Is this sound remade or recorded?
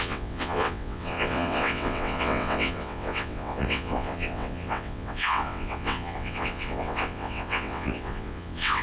remade